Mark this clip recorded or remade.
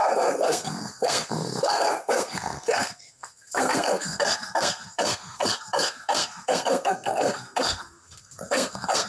remade